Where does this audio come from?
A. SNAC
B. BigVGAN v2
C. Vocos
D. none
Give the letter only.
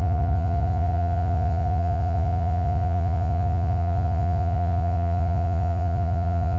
C